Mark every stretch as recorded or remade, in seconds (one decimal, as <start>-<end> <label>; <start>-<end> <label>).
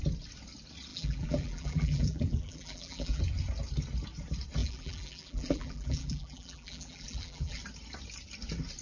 0.0-0.9 recorded; 0.9-3.2 remade; 3.2-4.6 recorded; 4.6-7.6 remade; 7.6-8.8 recorded